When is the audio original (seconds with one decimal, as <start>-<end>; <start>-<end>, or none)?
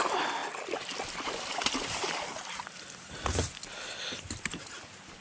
0.0-5.2